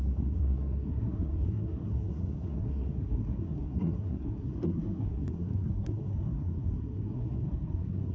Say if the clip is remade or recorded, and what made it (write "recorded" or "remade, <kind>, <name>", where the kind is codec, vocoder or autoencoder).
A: remade, codec, SNAC